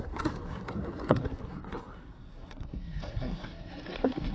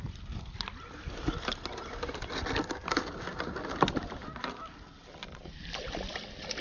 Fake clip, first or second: first